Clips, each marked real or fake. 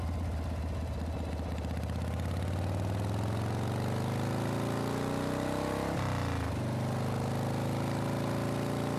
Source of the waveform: real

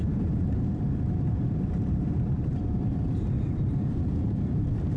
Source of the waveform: fake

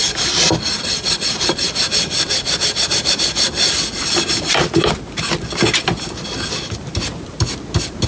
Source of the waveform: real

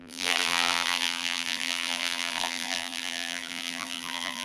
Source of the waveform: fake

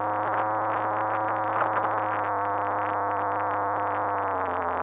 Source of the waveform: real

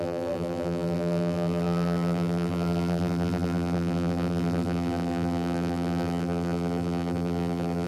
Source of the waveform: fake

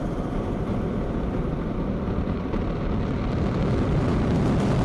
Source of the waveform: fake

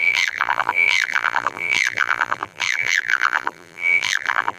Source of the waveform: fake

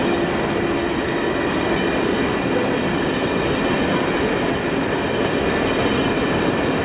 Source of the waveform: real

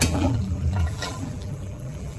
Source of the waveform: fake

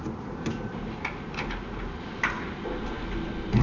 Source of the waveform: real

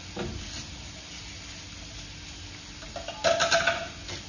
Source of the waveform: real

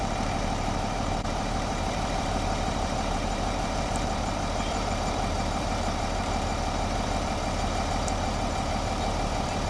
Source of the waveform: fake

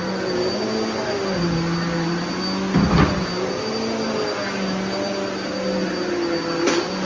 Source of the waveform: real